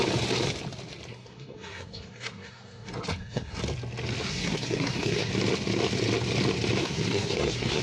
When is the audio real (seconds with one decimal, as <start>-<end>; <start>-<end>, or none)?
0.0-1.1; 3.6-4.3; 5.3-6.8